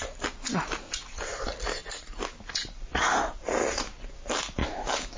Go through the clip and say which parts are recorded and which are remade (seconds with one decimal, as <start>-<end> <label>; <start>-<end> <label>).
0.0-4.6 recorded; 4.6-5.2 remade